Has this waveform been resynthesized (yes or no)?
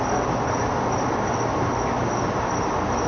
no